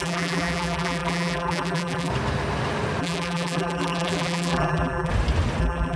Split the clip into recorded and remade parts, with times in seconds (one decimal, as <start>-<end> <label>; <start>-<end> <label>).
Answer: 0.0-2.1 remade; 2.1-3.0 recorded; 3.0-5.1 remade; 5.1-5.6 recorded; 5.6-6.0 remade